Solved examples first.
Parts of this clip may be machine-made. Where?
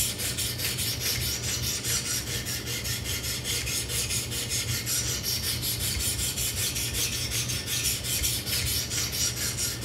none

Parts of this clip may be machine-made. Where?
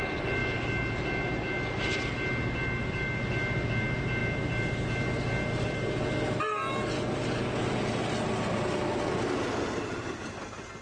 none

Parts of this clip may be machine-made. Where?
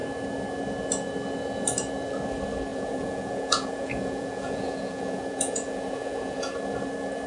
2.7-6.5 (vocoder, Vocos)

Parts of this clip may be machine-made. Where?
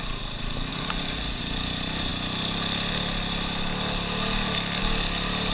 0.7-1.4 (vocoder, Vocos)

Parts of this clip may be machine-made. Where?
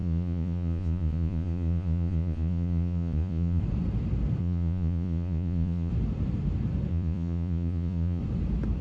0.0-3.6 (vocoder, Vocos); 4.4-5.9; 6.9-8.2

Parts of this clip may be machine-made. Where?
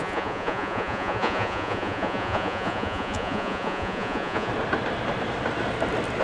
0.0-4.5 (vocoder, Vocos)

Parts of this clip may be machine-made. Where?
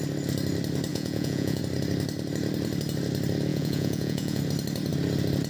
0.9-1.6 (vocoder, Vocos); 3.5-4.4